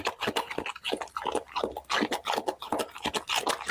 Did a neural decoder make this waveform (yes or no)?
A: no